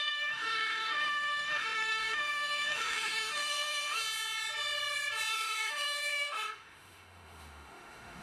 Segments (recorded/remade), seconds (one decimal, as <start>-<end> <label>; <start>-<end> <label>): 0.0-4.0 remade; 4.0-5.3 recorded; 5.3-8.2 remade